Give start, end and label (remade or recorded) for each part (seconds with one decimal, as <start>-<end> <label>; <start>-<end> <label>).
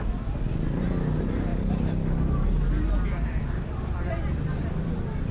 0.0-5.3 recorded